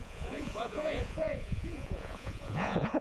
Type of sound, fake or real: fake